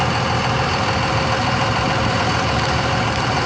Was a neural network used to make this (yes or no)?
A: yes